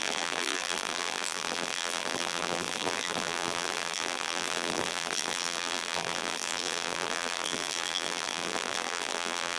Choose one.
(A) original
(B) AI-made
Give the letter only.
B